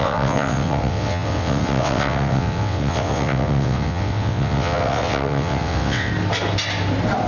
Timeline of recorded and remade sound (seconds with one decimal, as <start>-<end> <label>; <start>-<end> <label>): 0.0-6.1 remade; 6.1-7.3 recorded